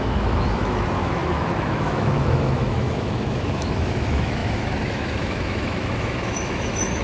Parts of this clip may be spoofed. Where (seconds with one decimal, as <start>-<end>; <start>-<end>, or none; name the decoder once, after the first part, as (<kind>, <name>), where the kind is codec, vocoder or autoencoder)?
0.0-7.0 (autoencoder, DAC-VAE)